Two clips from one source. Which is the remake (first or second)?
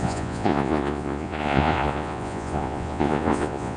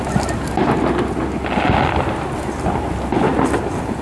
first